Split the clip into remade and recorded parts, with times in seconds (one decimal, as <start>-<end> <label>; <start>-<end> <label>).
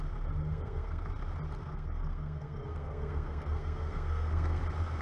0.0-0.4 recorded; 0.4-1.1 remade; 1.1-1.6 recorded; 1.6-4.6 remade; 4.6-5.0 recorded